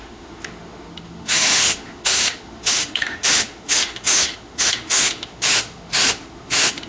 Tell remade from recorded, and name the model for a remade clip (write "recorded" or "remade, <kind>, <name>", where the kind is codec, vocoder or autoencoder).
remade, autoencoder, DAC-VAE